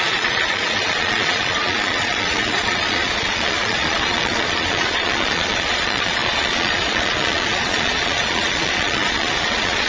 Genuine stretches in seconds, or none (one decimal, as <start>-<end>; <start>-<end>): none